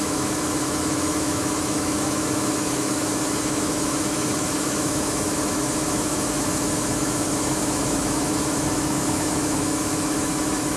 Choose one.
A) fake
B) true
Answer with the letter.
A